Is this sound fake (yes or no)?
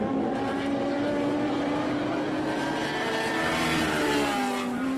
no